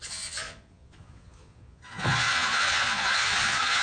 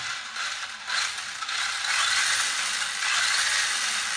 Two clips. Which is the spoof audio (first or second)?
first